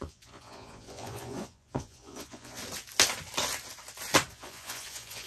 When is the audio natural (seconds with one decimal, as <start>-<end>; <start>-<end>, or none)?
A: 2.6-4.3